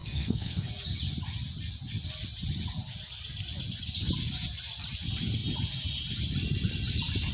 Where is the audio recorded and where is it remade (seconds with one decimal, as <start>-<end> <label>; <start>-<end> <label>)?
0.0-0.7 remade; 0.7-7.3 recorded